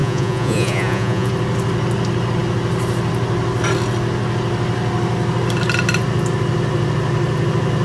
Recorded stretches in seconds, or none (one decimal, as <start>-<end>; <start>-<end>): 1.3-7.8